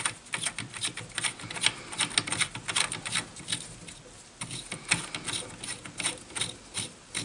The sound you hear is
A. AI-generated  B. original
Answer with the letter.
B